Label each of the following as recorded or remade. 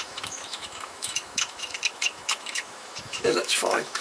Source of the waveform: remade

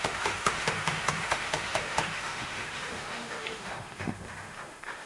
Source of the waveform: remade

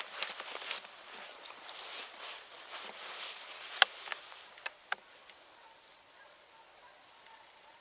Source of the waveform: recorded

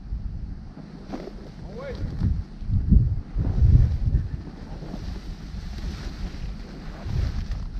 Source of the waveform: recorded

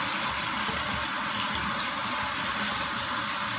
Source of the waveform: recorded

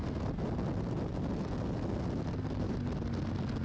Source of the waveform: recorded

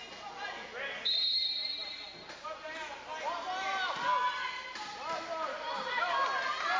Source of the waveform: recorded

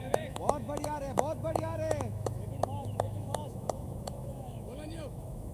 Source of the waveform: remade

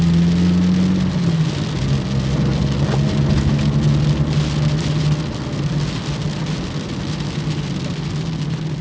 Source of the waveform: recorded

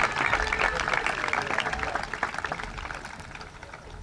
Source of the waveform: recorded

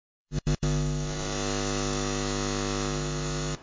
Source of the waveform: remade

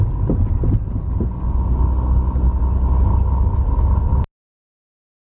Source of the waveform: recorded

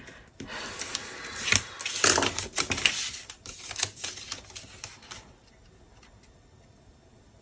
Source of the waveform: recorded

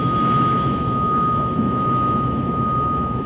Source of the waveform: remade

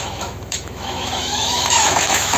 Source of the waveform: remade